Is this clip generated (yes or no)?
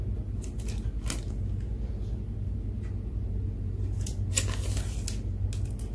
no